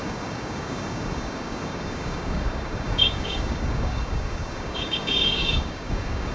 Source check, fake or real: fake